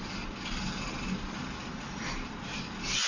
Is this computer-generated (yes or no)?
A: no